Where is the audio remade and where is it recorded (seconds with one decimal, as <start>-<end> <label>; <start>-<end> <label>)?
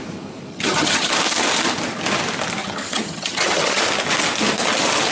0.0-0.5 recorded; 0.5-1.1 remade; 1.1-2.6 recorded; 2.6-3.8 remade; 3.8-5.1 recorded